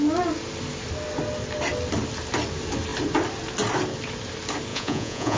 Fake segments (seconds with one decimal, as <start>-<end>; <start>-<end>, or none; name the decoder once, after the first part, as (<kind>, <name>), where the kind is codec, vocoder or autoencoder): 4.7-5.4 (vocoder, Vocos)